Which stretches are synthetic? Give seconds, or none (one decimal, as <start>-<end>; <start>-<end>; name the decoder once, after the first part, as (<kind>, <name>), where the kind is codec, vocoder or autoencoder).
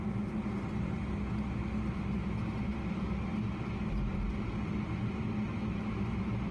none